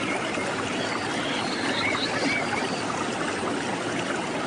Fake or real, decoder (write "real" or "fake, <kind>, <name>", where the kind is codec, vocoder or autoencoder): real